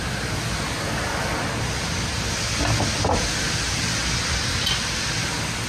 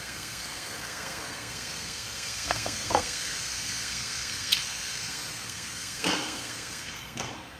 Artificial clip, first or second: second